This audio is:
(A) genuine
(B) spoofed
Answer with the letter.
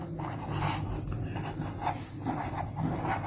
A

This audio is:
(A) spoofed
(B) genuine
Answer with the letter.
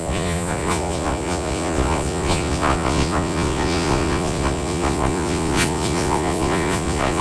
A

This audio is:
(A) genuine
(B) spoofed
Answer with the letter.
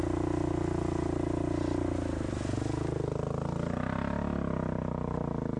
A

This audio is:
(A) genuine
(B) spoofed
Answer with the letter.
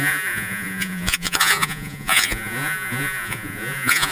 B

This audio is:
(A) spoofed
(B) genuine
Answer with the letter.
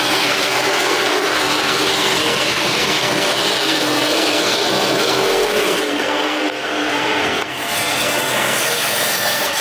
A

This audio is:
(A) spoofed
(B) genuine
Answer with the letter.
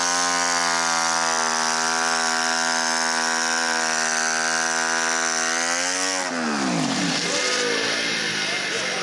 B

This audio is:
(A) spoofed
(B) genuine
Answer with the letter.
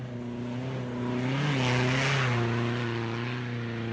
B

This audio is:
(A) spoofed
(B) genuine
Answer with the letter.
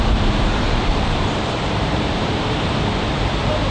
A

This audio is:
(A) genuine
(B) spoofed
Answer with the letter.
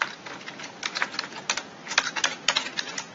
A